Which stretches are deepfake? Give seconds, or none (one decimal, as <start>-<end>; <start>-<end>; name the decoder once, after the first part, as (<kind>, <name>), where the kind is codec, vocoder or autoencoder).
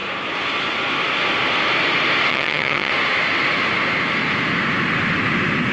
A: 2.3-2.9 (vocoder, HiFi-GAN)